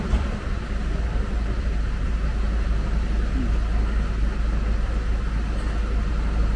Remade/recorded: recorded